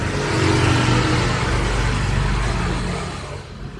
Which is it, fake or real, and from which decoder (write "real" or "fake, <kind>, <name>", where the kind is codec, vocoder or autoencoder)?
real